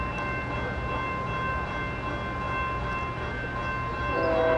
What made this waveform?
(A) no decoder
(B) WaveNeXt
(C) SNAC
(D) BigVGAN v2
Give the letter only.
A